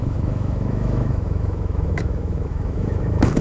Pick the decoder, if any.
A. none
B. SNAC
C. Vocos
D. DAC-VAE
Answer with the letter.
D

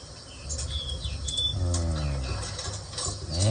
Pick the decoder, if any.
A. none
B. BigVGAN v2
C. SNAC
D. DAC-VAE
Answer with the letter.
A